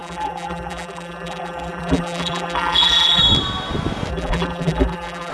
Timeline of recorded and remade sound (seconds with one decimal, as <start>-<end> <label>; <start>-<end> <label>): 0.0-3.2 remade; 3.2-4.1 recorded; 4.1-5.3 remade